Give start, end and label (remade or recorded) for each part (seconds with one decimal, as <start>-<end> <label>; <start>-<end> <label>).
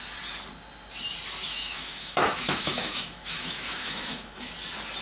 0.0-1.5 recorded; 1.5-4.5 remade; 4.5-5.0 recorded